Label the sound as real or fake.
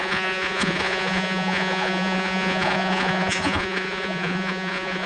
fake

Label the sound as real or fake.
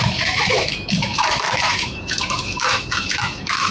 fake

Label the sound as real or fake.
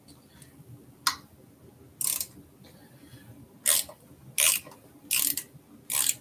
real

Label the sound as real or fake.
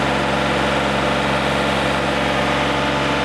real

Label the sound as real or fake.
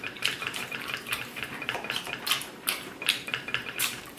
fake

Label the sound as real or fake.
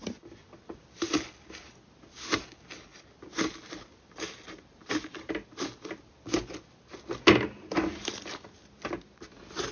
real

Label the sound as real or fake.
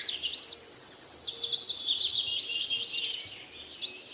real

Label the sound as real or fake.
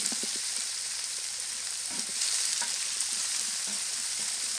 fake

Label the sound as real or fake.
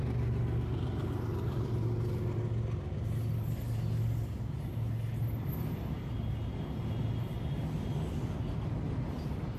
real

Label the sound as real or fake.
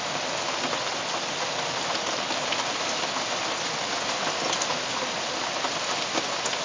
real